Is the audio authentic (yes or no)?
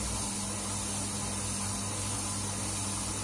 yes